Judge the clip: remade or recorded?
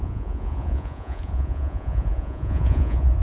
remade